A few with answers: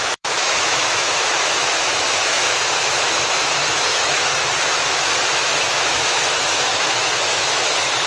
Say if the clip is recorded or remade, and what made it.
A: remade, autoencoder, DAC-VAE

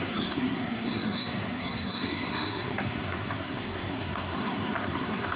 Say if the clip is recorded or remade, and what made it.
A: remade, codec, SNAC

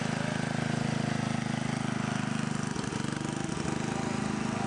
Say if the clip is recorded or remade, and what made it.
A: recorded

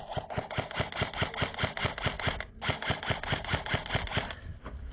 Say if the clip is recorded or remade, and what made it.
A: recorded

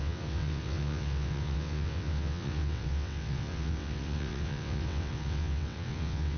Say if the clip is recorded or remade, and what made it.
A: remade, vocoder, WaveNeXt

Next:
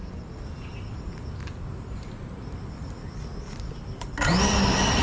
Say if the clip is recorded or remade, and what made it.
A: recorded